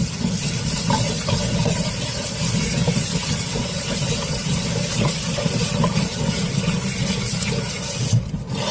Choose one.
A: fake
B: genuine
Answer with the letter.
B